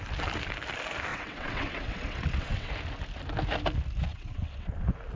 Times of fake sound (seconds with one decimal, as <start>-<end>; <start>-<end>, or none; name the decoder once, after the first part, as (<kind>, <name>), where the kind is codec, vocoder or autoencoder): 1.1-2.7 (vocoder, WaveNeXt); 4.1-4.7